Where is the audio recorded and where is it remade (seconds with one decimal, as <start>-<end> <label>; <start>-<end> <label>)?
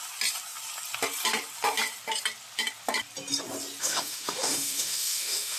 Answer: 0.0-3.8 recorded; 3.8-5.6 remade